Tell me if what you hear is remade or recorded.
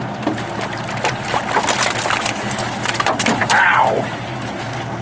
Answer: recorded